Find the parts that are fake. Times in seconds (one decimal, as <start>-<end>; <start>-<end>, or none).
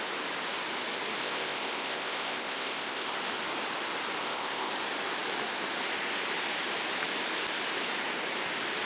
1.2-3.1; 4.2-4.7